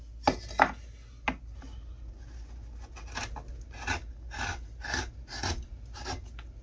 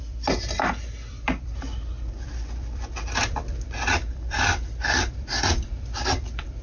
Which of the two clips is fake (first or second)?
second